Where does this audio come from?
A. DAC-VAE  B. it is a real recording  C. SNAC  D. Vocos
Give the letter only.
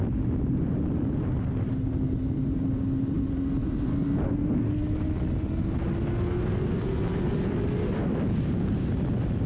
B